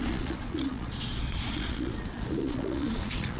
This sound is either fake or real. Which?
fake